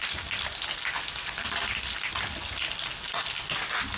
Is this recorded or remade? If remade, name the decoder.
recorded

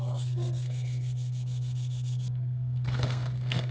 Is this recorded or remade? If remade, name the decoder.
remade, codec, SNAC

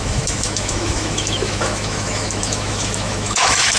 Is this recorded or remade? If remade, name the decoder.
remade, autoencoder, DAC-VAE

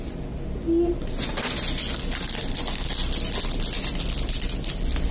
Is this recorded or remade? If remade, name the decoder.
recorded